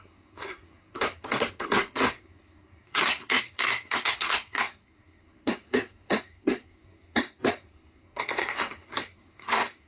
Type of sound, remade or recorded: remade